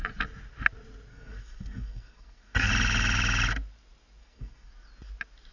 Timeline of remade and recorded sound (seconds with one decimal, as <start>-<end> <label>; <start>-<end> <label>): 0.0-1.1 recorded; 1.1-2.7 remade; 2.7-4.2 recorded; 4.2-4.7 remade; 4.7-5.5 recorded